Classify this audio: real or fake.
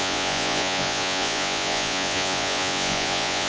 fake